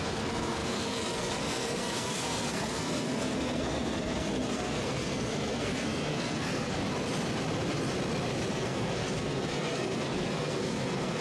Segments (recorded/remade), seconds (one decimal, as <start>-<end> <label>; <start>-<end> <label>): 0.0-6.8 remade; 6.8-8.5 recorded; 8.5-11.2 remade